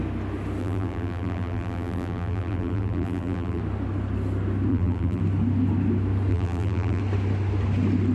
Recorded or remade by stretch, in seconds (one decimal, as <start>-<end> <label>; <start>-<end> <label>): 0.0-0.6 recorded; 0.6-3.6 remade; 3.6-4.7 recorded; 4.7-5.2 remade; 5.2-6.3 recorded; 6.3-7.0 remade; 7.0-8.1 recorded